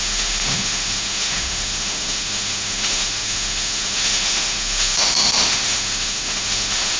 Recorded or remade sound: remade